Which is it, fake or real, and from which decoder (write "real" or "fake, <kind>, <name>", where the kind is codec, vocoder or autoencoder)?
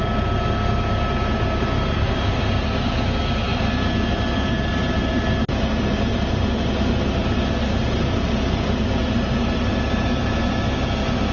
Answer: real